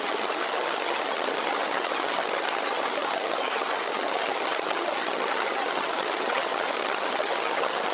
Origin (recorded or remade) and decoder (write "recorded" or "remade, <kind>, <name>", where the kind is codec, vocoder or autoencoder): remade, vocoder, HiFi-GAN